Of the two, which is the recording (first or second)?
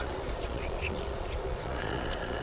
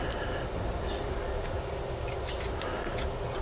second